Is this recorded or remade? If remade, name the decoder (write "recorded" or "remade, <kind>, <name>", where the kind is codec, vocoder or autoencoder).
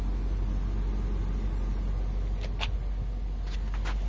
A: recorded